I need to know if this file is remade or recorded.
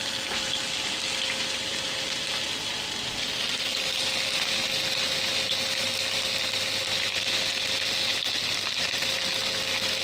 recorded